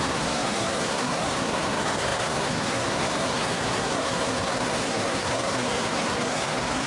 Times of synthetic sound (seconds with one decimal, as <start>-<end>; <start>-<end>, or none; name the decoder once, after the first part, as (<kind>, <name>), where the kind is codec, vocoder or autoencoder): 0.0-6.9 (codec, SNAC)